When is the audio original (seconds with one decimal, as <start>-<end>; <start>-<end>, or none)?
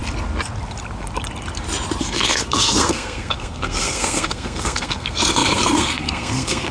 0.0-2.0